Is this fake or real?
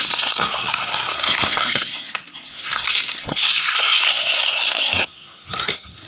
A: fake